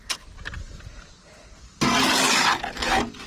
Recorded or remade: recorded